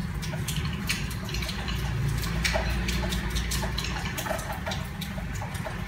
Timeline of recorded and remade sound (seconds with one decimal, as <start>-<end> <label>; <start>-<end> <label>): 0.0-0.8 recorded; 0.8-2.0 remade; 2.0-4.0 recorded; 4.0-5.9 remade